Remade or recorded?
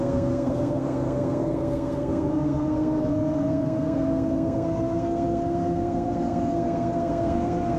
remade